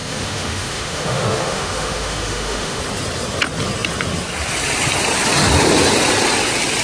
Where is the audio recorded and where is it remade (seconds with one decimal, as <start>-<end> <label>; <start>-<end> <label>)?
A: 0.0-2.8 remade; 2.8-6.8 recorded